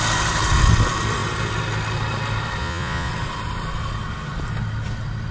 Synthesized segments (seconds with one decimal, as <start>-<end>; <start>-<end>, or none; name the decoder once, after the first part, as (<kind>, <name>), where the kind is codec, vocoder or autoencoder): 2.6-3.1 (vocoder, Vocos)